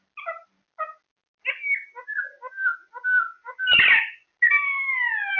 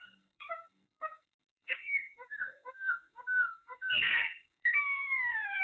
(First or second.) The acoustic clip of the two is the first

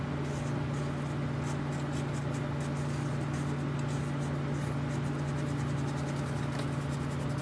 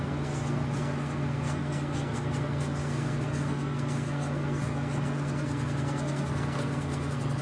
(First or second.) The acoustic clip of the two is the first